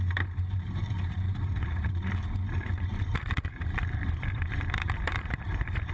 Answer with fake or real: fake